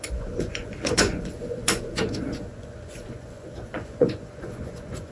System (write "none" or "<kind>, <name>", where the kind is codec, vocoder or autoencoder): vocoder, Vocos